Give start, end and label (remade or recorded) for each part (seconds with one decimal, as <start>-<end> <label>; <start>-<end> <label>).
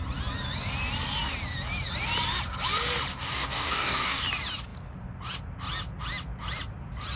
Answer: 0.0-3.1 recorded; 3.1-4.2 remade; 4.2-7.2 recorded